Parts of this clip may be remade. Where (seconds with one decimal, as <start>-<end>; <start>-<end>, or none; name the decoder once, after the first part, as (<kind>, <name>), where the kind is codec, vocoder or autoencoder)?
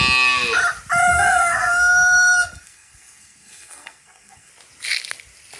1.1-4.5 (codec, SNAC)